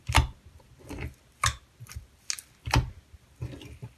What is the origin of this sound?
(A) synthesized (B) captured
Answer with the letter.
B